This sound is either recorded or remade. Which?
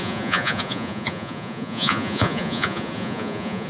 remade